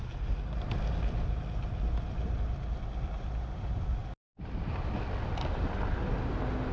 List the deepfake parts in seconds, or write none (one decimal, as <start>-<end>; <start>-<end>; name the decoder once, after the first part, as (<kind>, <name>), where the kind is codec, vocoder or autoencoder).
none